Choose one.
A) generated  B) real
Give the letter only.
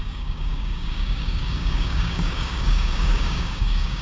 A